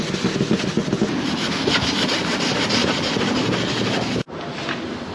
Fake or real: real